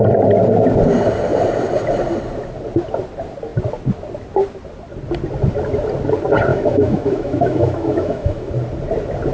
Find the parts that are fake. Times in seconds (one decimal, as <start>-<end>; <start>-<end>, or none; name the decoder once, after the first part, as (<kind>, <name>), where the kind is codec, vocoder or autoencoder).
6.5-8.5 (autoencoder, DAC-VAE)

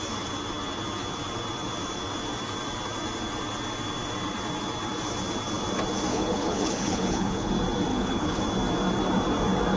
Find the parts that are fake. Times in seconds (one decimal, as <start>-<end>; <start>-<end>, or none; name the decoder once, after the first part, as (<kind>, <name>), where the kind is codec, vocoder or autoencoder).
6.1-7.5 (codec, HILCodec); 7.9-8.4